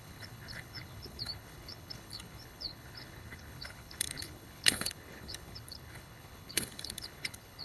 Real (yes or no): no